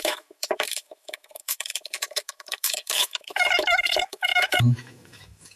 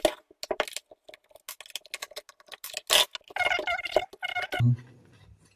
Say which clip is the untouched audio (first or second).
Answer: second